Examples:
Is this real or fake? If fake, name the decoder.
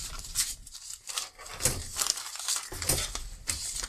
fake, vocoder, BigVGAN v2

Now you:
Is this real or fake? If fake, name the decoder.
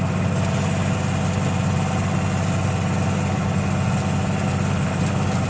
real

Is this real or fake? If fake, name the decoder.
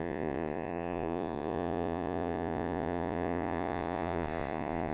fake, vocoder, Vocos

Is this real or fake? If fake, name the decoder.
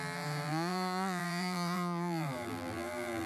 fake, vocoder, BigVGAN v2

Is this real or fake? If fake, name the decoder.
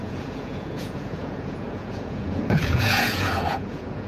fake, vocoder, Vocos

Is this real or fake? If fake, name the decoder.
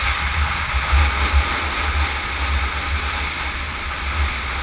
real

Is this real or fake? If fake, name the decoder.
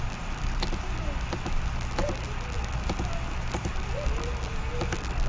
real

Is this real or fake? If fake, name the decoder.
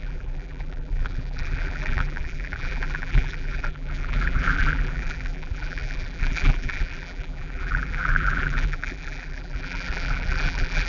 fake, vocoder, BigVGAN v2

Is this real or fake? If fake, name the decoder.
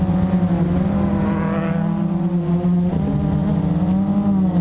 real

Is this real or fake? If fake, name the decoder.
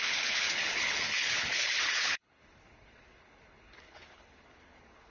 fake, codec, HILCodec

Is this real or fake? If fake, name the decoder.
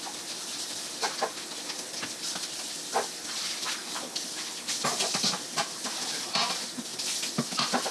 real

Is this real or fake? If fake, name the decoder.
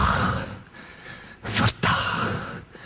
real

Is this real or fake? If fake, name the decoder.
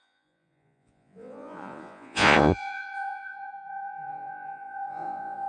fake, vocoder, Vocos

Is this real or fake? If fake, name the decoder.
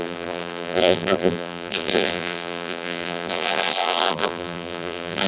fake, vocoder, BigVGAN v2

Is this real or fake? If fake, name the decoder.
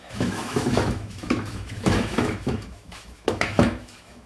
fake, autoencoder, DAC-VAE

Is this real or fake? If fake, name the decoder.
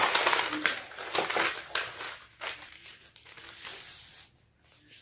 real